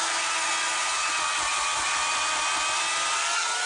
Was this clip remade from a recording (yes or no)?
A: no